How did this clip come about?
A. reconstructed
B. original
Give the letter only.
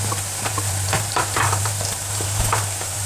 A